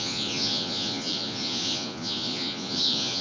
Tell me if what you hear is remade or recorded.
remade